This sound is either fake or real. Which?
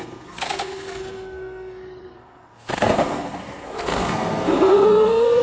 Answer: fake